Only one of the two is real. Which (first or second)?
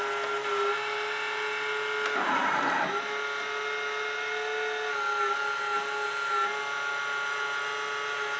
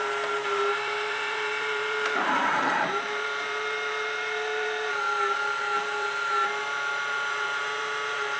first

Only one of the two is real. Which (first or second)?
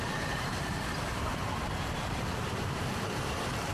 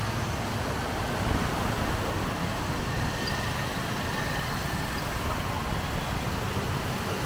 second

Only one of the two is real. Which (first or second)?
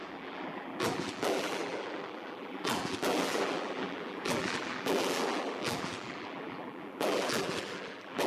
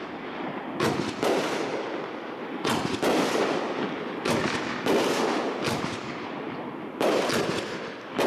second